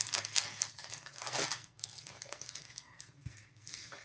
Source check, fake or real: fake